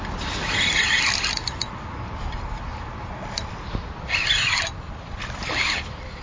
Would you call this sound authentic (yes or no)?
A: yes